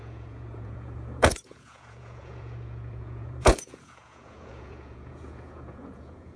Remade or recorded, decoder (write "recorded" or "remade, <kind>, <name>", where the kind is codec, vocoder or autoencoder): remade, vocoder, Vocos